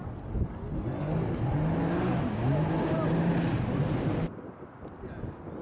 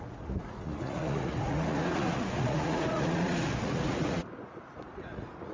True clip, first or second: first